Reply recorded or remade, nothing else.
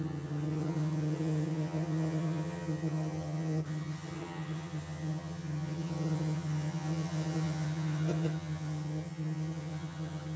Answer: remade